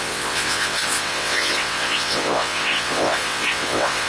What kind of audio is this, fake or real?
fake